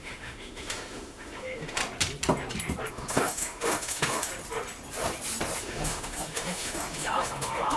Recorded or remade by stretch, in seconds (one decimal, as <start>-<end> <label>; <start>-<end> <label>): 0.0-1.8 remade; 1.8-2.9 recorded; 2.9-4.3 remade; 4.3-5.6 recorded; 5.6-7.8 remade

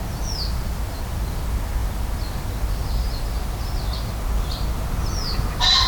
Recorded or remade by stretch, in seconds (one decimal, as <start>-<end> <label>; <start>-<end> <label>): 0.0-5.9 recorded

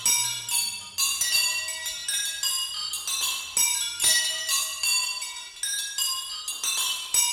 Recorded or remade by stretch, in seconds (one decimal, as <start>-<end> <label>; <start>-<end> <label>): 0.0-7.3 recorded

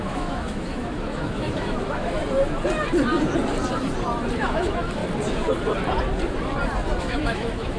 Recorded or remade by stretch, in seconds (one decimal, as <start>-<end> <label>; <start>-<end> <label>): 0.0-2.2 remade; 2.2-4.3 recorded; 4.3-5.0 remade; 5.0-7.0 recorded; 7.0-7.8 remade